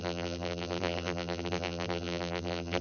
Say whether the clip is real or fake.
fake